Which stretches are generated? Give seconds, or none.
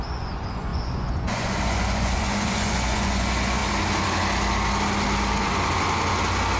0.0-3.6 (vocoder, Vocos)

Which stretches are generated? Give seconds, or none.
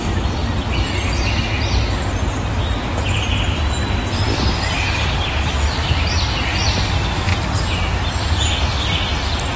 none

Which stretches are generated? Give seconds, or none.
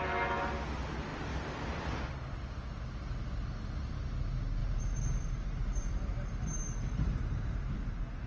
4.6-8.3 (vocoder, BigVGAN v2)